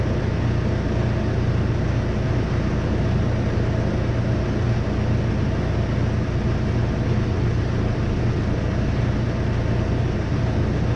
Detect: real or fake real